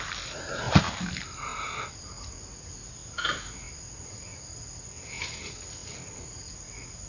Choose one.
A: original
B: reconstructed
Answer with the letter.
A